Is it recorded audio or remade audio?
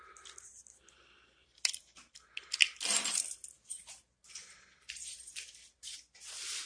recorded